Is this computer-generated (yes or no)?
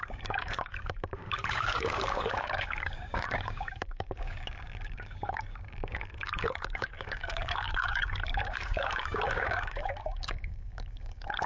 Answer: yes